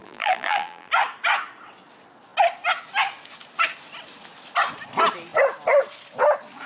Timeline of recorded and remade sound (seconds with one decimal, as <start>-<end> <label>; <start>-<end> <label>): 0.0-0.9 remade; 0.9-6.7 recorded